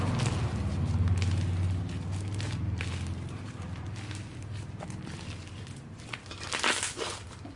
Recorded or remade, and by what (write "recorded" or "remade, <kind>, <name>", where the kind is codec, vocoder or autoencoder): recorded